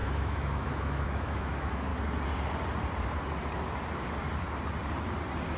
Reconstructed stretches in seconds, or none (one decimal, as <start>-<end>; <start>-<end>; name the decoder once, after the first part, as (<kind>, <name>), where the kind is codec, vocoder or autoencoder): 0.0-1.9 (autoencoder, DAC-VAE)